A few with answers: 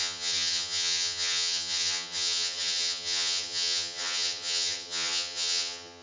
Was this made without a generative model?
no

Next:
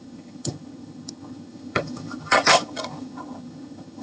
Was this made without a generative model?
no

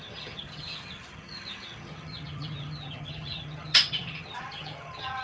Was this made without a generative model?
no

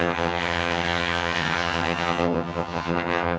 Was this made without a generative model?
no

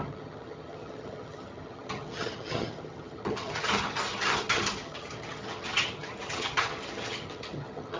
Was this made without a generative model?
no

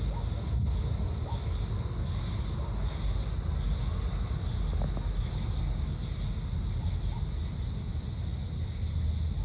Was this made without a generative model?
yes